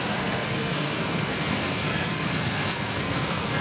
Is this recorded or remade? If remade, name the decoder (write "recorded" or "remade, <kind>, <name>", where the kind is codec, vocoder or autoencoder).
remade, codec, SNAC